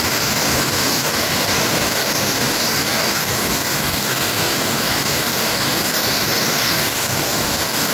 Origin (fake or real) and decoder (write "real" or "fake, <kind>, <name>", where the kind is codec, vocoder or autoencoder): fake, codec, DAC